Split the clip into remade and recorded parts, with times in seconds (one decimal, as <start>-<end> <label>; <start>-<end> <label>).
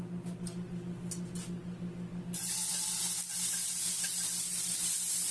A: 0.0-5.3 recorded